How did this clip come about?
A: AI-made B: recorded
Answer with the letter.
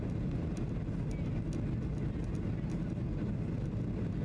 B